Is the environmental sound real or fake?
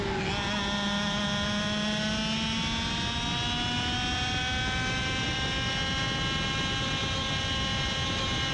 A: real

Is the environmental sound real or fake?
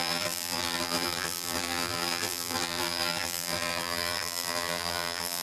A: fake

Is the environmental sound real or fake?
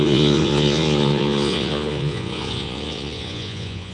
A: fake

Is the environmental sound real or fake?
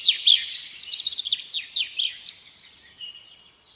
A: real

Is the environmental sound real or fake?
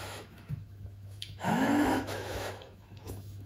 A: fake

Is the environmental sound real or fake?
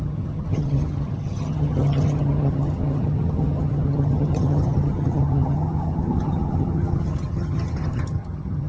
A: fake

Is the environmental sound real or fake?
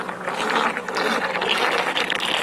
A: real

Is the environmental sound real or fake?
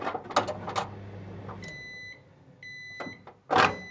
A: real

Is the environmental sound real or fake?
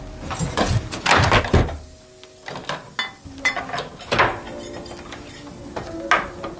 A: real